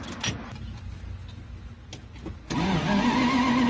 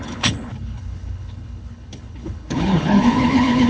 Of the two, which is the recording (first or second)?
first